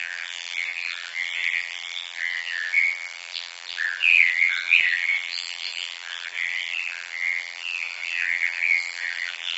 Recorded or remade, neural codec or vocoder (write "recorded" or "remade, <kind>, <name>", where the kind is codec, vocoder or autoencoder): remade, vocoder, BigVGAN v2